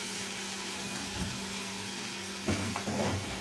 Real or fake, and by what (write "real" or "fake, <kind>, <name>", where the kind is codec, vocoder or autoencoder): fake, codec, SNAC